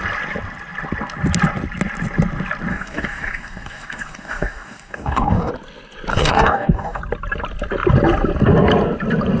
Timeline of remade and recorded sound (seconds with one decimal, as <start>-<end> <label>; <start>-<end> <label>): 0.0-2.7 recorded; 2.7-5.5 remade; 5.5-6.1 recorded; 6.1-7.0 remade; 7.0-9.4 recorded